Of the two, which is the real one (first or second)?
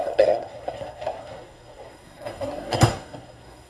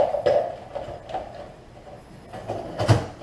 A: second